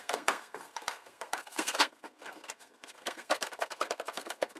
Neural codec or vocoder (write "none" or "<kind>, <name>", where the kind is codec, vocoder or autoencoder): codec, SNAC